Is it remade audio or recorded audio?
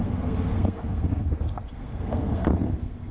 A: remade